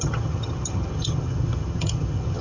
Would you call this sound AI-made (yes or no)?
yes